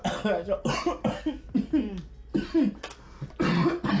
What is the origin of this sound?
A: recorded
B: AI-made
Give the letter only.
A